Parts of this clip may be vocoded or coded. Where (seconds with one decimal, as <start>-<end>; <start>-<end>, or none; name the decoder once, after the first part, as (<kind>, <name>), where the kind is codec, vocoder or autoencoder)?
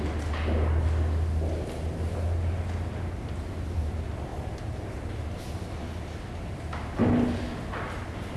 none